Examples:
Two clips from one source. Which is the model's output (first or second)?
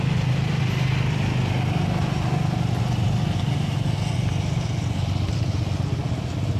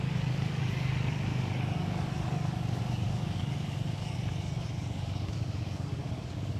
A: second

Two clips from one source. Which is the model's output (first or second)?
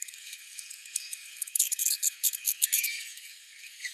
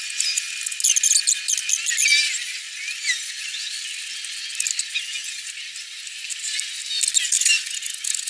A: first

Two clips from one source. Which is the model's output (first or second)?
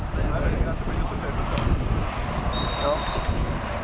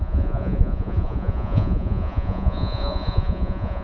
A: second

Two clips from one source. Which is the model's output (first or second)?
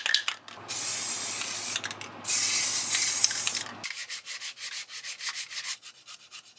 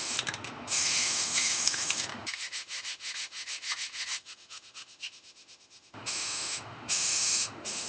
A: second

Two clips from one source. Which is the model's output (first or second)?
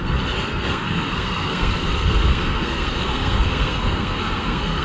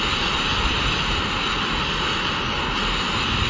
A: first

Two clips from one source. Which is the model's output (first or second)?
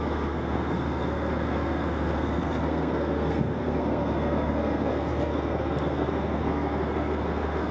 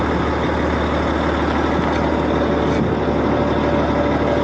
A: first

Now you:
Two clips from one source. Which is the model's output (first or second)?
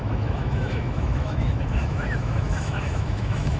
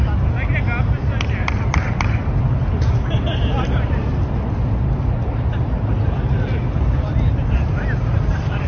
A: first